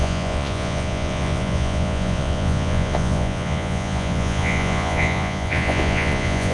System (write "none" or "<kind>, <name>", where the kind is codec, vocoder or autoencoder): vocoder, Vocos